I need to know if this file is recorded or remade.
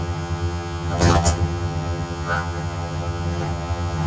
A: remade